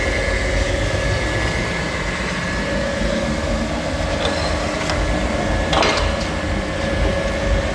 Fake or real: real